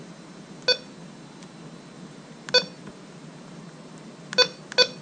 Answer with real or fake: real